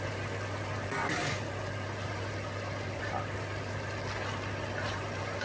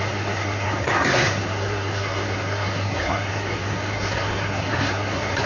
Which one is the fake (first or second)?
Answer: second